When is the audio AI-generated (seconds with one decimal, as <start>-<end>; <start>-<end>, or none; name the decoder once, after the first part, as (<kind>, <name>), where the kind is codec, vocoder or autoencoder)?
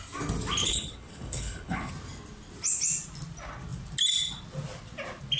0.6-1.9 (codec, HILCodec)